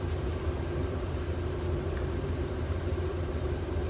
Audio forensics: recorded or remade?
remade